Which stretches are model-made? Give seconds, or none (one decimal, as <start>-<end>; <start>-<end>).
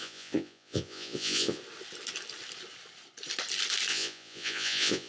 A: 0.0-1.6; 3.9-5.1